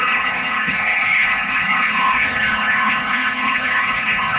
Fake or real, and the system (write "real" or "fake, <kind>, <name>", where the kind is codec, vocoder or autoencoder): fake, codec, HILCodec